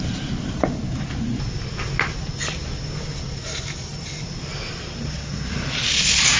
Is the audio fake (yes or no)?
no